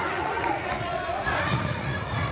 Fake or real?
fake